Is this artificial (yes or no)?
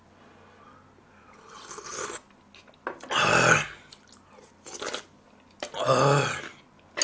no